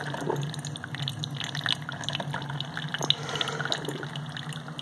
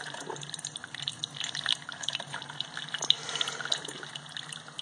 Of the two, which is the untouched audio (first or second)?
first